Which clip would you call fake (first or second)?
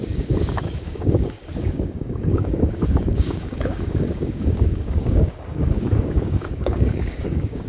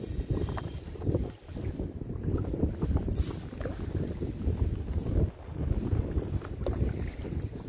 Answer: first